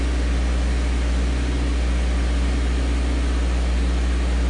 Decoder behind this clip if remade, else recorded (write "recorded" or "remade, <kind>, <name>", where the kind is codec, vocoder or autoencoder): recorded